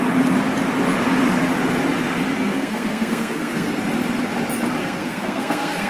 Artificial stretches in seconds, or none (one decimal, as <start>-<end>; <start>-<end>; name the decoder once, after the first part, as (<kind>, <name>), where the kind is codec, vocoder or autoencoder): 2.5-3.7 (codec, SNAC); 4.8-5.9